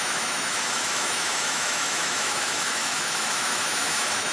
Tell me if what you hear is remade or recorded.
remade